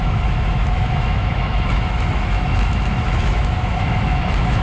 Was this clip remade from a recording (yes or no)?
yes